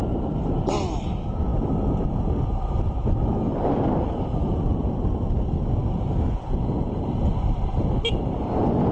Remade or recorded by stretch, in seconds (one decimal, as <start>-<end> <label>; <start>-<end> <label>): 0.0-8.9 recorded